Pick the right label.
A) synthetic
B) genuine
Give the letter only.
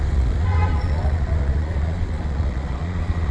A